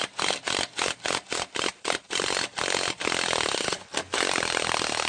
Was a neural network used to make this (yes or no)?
no